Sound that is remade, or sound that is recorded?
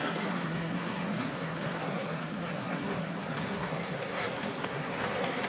remade